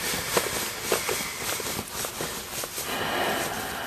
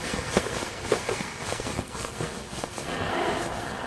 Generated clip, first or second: second